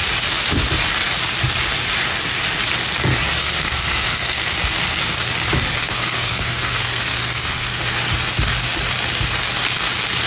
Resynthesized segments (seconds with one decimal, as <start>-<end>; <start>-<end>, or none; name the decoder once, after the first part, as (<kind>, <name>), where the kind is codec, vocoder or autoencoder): 3.4-4.4 (codec, SNAC); 5.8-7.8